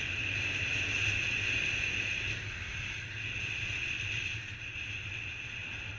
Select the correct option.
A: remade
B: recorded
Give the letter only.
B